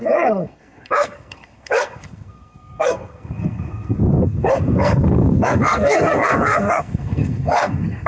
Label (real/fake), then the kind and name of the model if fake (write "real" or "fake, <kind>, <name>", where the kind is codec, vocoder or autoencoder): fake, codec, SNAC